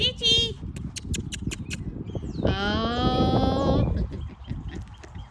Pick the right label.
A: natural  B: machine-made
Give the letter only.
A